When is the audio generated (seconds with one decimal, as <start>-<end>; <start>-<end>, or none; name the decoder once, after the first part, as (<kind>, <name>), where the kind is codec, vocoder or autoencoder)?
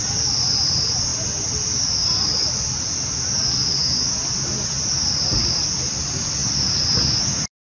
none